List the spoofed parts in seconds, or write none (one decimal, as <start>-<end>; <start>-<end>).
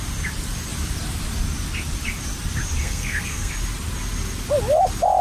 2.8-3.5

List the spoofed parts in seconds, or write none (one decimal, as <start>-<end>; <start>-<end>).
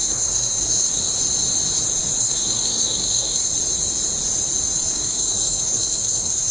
0.0-0.9; 2.2-3.5; 4.9-6.5